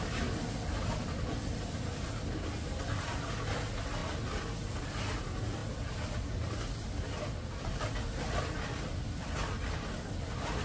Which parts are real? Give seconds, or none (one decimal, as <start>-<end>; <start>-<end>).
0.0-10.6